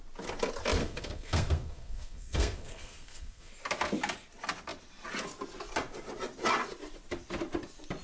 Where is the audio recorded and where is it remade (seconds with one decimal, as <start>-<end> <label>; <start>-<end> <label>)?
0.0-0.8 recorded; 0.8-3.5 remade; 3.5-8.0 recorded